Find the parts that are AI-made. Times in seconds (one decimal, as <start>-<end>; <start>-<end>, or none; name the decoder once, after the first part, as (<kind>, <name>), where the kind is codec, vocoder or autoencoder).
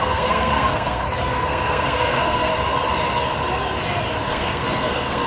0.0-2.5 (codec, SNAC); 4.3-5.3